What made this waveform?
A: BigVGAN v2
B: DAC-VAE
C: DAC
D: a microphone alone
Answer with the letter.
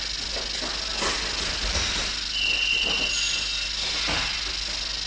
D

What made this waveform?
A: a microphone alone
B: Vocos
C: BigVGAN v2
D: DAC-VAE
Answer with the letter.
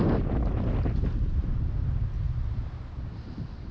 A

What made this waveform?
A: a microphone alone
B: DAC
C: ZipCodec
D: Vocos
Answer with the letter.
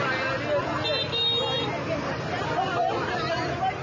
A